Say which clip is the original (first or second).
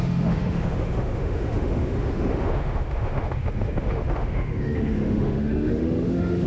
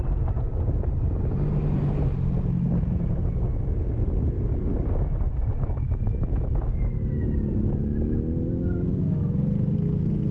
second